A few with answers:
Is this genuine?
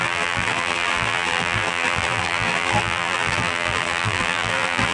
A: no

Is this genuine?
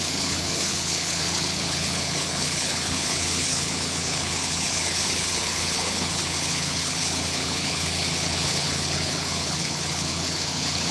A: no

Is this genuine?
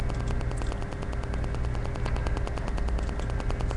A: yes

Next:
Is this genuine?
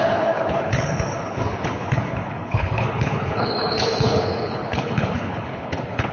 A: no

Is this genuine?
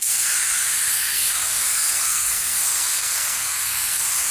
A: no